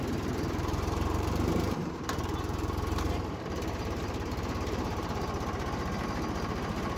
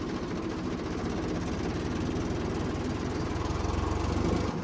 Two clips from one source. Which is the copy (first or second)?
first